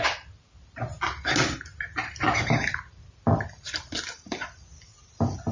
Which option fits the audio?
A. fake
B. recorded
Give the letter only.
B